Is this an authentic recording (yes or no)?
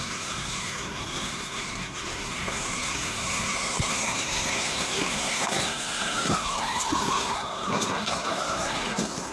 no